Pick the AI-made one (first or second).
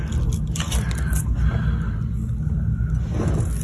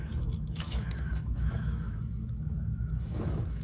second